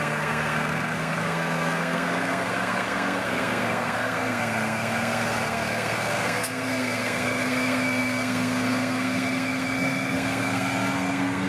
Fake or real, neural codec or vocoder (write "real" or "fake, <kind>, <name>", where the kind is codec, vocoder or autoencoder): fake, codec, SNAC